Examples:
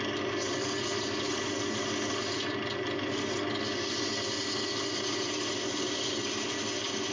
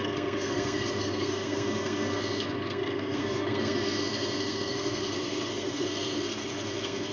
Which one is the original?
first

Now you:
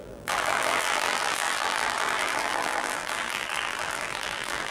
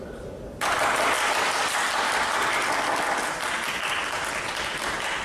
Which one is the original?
second